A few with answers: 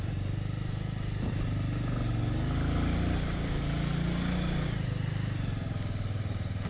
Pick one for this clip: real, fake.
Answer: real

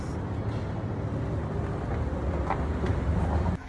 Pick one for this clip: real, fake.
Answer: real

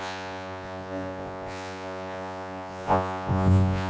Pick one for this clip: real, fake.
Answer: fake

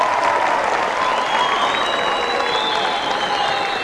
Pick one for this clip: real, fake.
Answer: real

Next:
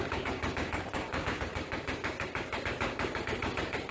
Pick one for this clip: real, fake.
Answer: fake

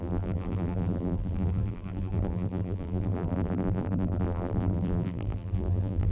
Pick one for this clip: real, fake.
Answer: fake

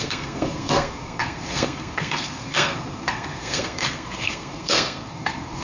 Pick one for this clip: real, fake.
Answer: fake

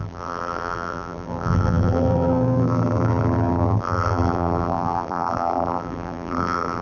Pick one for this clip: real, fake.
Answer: fake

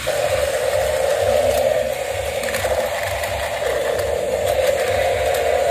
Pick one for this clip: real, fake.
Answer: real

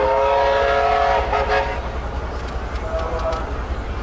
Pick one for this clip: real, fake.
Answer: real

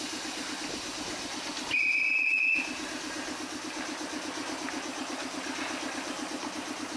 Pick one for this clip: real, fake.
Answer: real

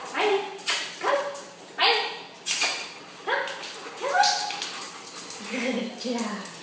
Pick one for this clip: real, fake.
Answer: real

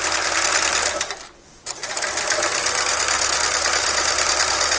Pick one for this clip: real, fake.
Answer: real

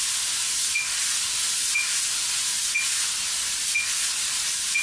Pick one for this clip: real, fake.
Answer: real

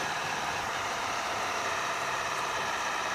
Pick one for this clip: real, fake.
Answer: fake